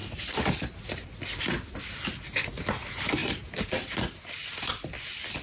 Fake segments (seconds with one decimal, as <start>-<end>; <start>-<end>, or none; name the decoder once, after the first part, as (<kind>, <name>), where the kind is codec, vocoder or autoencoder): 3.2-4.5 (vocoder, BigVGAN v2)